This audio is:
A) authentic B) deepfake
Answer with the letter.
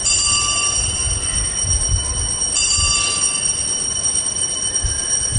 A